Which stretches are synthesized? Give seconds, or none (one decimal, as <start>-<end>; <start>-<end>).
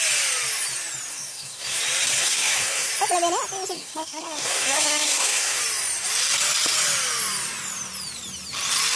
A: 1.1-1.8; 2.2-2.9; 3.7-5.6